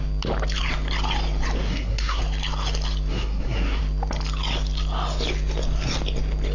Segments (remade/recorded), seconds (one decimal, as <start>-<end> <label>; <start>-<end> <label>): 0.0-1.7 recorded; 1.7-2.2 remade; 2.2-3.1 recorded; 3.1-3.8 remade; 3.8-6.5 recorded

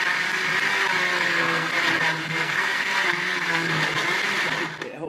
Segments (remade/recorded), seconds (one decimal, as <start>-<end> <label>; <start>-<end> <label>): 0.0-1.1 recorded; 1.1-1.7 remade; 1.7-2.2 recorded; 2.2-3.8 remade; 3.8-5.1 recorded